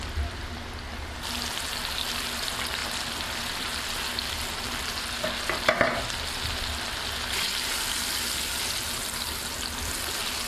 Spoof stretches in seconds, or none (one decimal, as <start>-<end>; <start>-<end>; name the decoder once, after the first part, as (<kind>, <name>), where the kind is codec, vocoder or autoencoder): none